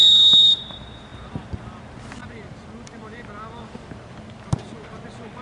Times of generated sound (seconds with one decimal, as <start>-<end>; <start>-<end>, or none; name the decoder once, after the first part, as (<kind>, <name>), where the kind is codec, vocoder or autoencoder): 1.1-1.6 (vocoder, BigVGAN v2); 2.2-4.4